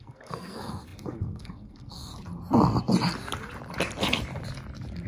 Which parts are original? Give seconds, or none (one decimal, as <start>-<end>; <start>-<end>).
2.1-5.1